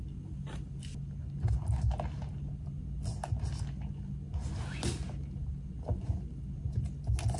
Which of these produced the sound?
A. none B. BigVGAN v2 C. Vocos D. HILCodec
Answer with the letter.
A